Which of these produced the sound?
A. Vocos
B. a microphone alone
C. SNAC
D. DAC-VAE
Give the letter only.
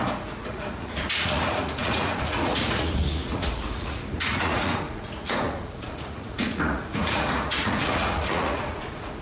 A